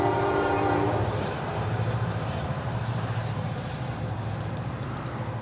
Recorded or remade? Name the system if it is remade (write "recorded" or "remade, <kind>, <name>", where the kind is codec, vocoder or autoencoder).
remade, vocoder, BigVGAN v2